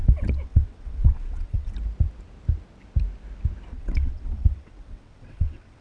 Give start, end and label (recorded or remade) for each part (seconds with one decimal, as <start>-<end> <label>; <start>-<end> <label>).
0.0-1.7 remade; 1.7-3.7 recorded; 3.7-5.8 remade